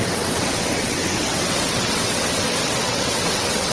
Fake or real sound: fake